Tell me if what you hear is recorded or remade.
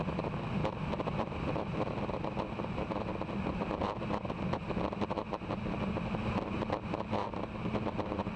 recorded